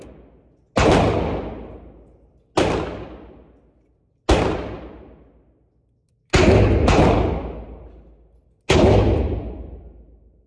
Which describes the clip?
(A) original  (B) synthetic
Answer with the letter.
A